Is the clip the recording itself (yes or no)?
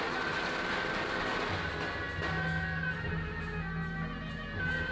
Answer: yes